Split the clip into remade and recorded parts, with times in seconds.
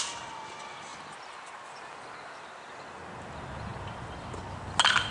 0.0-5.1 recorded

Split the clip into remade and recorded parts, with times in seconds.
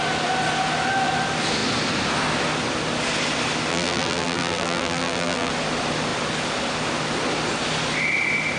0.0-3.7 recorded; 3.7-5.5 remade; 5.5-8.6 recorded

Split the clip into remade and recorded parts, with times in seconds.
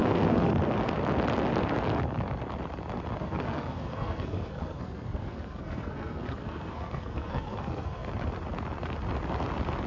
0.0-0.5 remade; 0.5-3.2 recorded; 3.2-8.1 remade; 8.1-9.9 recorded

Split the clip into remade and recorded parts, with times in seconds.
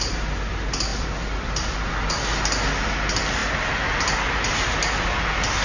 0.0-0.9 recorded; 0.9-1.9 remade; 1.9-5.6 recorded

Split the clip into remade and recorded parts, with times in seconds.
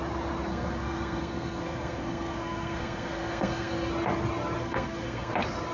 0.0-0.5 recorded; 0.5-3.9 remade; 3.9-4.6 recorded; 4.6-5.3 remade; 5.3-5.7 recorded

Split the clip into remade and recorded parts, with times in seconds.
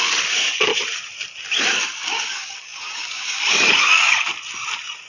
0.0-0.7 remade; 0.7-1.7 recorded; 1.7-4.3 remade; 4.3-5.1 recorded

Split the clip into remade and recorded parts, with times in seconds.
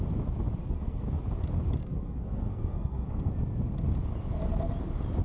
0.0-0.6 recorded; 0.6-1.2 remade; 1.2-1.8 recorded; 1.8-3.3 remade; 3.3-5.2 recorded